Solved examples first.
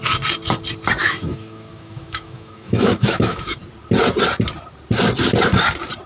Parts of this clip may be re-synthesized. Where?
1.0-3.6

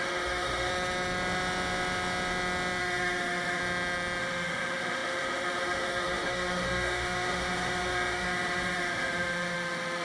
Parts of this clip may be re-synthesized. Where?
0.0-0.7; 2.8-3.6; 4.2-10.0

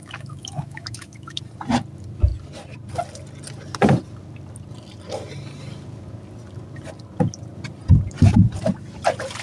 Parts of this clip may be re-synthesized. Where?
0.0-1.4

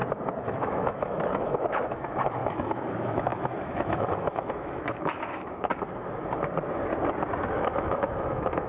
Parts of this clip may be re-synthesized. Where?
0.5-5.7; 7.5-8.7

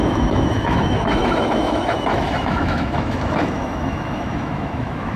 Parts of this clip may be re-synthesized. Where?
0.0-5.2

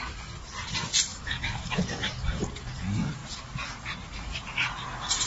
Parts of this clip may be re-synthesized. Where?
1.1-1.8